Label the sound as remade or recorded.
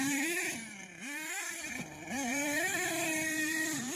remade